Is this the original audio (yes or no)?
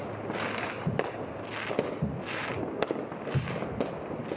yes